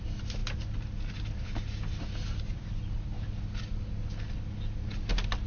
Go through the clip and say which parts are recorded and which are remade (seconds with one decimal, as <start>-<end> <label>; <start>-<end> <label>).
0.0-5.5 recorded

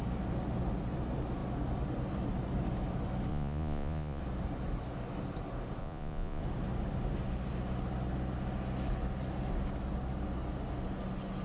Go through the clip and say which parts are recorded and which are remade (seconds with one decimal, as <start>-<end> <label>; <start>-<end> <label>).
0.0-3.3 recorded; 3.3-4.2 remade; 4.2-5.8 recorded; 5.8-6.4 remade; 6.4-11.4 recorded

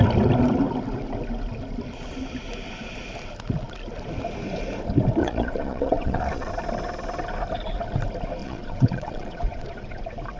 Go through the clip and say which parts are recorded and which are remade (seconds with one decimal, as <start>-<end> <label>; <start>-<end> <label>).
0.0-5.2 recorded; 5.2-6.5 remade; 6.5-8.4 recorded; 8.4-10.0 remade; 10.0-10.4 recorded

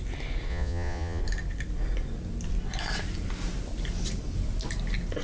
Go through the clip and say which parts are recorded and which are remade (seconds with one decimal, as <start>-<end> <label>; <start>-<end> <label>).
0.0-0.5 recorded; 0.5-1.2 remade; 1.2-5.2 recorded

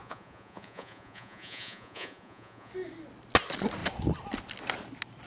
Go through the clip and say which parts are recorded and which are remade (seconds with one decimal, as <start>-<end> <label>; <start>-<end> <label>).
0.0-2.7 remade; 2.7-5.3 recorded

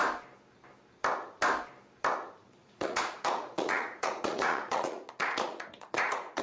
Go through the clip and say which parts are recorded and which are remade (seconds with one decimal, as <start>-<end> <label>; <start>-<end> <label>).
0.0-2.6 recorded; 2.6-6.4 remade

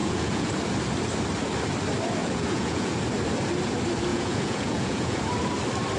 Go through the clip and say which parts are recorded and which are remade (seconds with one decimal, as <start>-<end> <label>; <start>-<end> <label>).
0.0-0.5 remade; 0.5-2.2 recorded; 2.2-2.9 remade; 2.9-4.1 recorded; 4.1-5.2 remade; 5.2-6.0 recorded